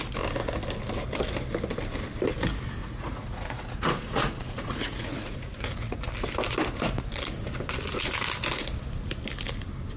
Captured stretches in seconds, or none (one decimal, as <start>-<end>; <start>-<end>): 0.0-2.8; 6.1-10.0